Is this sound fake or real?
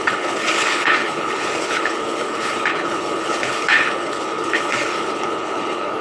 fake